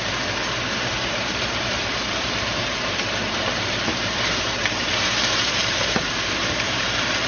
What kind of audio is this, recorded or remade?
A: remade